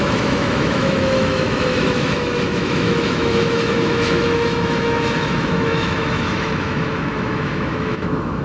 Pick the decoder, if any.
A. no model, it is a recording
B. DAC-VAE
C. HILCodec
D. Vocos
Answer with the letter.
B